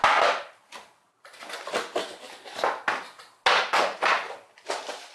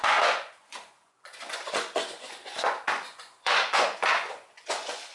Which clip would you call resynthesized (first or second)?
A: second